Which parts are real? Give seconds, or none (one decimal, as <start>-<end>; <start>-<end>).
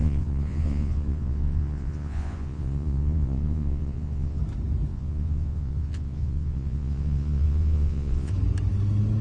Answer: 4.4-4.9; 8.3-9.2